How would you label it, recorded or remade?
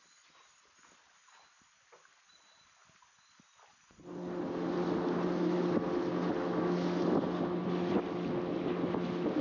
recorded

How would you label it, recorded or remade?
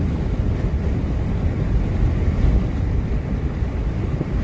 remade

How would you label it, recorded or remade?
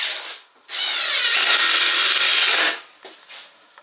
recorded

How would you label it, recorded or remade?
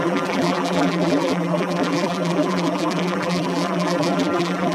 remade